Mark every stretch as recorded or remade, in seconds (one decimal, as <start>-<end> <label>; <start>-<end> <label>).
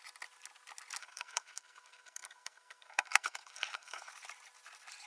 0.0-1.0 recorded; 1.0-4.1 remade; 4.1-5.1 recorded